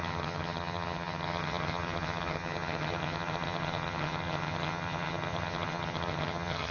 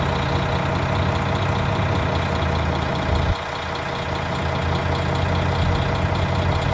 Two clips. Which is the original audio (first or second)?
second